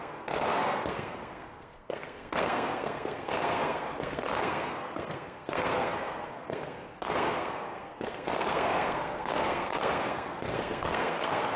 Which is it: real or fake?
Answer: fake